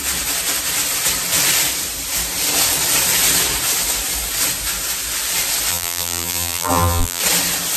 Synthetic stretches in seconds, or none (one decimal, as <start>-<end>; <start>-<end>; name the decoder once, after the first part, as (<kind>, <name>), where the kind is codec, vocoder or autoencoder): 5.7-7.2 (vocoder, BigVGAN v2)